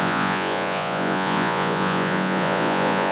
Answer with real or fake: fake